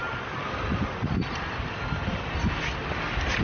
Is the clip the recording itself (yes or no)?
yes